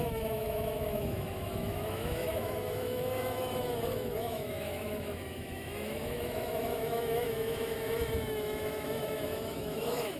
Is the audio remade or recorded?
remade